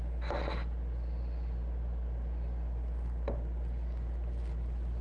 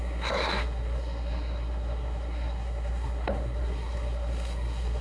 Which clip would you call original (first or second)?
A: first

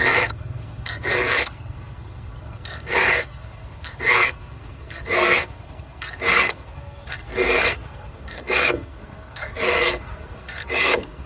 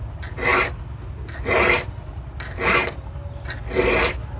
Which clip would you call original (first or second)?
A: second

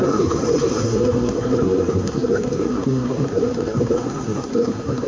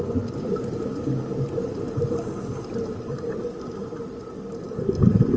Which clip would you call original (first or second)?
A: second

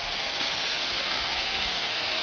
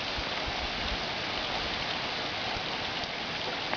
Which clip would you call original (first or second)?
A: second